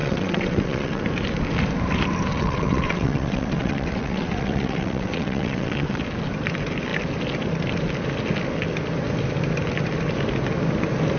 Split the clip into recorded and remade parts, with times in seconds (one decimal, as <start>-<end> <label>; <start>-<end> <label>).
0.0-1.0 remade; 1.0-2.3 recorded; 2.3-6.0 remade; 6.0-11.2 recorded